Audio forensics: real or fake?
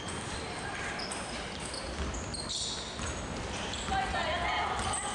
real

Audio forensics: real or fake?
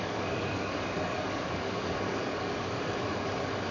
fake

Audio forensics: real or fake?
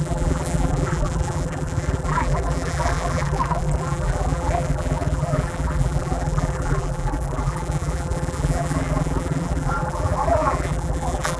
fake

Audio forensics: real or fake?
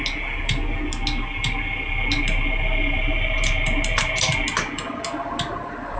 real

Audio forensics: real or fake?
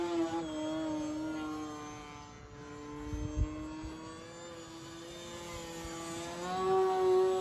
real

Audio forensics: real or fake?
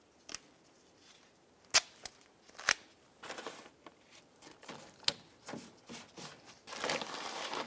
real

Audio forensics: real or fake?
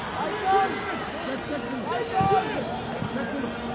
real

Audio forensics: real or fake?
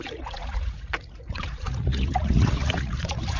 fake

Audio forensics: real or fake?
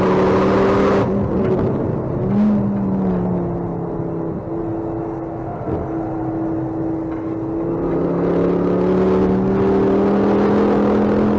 real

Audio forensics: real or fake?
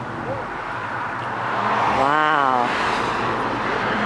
real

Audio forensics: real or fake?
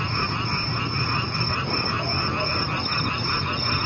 real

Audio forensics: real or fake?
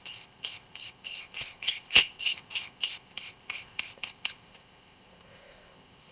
fake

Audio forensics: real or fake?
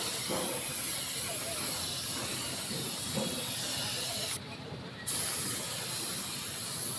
real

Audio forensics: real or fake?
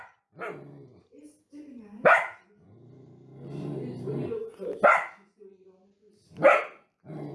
real